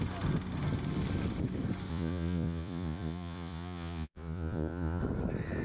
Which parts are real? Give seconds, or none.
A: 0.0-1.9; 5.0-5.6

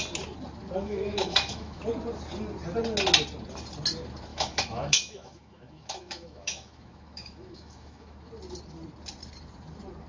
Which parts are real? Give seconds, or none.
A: 0.0-0.8; 1.8-4.3; 8.3-10.1

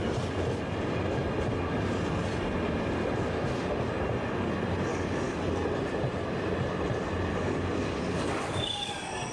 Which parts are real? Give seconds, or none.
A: 0.0-4.9; 5.4-7.3; 8.9-9.3